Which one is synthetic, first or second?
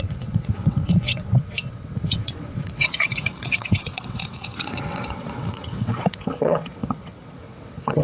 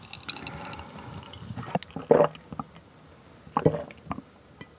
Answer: first